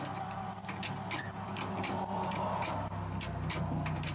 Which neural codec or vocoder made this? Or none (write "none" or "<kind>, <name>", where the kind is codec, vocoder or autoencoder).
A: none